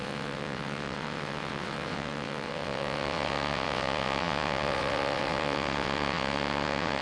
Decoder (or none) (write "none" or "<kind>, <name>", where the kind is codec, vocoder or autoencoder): vocoder, WaveNeXt